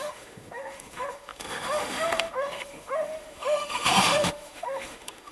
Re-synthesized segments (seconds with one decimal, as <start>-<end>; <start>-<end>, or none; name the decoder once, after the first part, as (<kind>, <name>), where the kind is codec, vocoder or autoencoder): 0.0-5.3 (autoencoder, DAC-VAE)

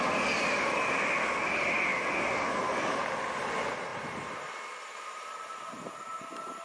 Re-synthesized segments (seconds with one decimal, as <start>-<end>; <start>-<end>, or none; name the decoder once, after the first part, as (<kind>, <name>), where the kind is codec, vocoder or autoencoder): none

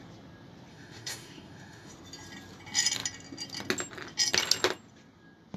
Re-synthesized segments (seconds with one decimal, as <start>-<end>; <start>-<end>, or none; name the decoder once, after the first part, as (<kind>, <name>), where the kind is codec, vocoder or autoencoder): 0.7-1.9 (autoencoder, DAC-VAE)

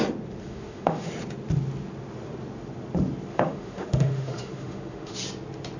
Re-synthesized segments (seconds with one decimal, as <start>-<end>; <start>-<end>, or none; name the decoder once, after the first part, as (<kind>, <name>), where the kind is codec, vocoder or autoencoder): 0.4-1.1 (autoencoder, DAC-VAE); 3.3-5.2

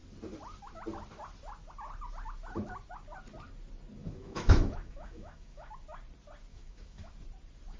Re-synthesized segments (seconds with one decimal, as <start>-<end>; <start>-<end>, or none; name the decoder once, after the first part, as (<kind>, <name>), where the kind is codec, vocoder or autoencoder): 4.0-5.7 (autoencoder, DAC-VAE); 6.5-7.1